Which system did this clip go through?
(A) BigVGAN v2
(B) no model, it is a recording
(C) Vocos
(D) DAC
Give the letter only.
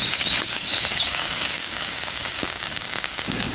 D